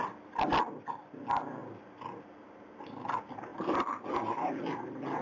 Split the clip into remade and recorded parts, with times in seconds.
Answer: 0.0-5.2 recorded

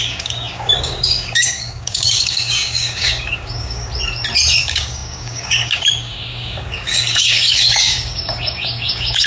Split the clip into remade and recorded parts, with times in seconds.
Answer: 0.0-3.9 remade; 3.9-4.6 recorded; 4.6-9.3 remade

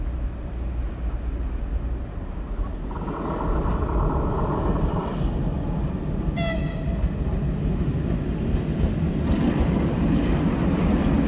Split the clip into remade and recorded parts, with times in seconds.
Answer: 0.0-11.3 recorded

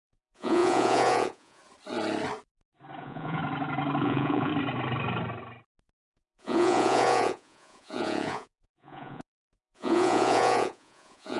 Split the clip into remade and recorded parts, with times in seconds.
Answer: 0.0-1.6 remade; 1.6-3.0 recorded; 3.0-3.4 remade; 3.4-4.0 recorded; 4.0-4.5 remade; 4.5-6.1 recorded; 6.1-11.4 remade

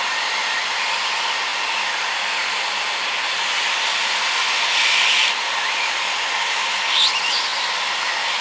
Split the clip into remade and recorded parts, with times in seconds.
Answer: 0.0-8.4 recorded